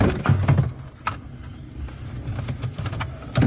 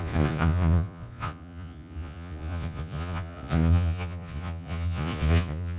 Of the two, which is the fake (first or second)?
second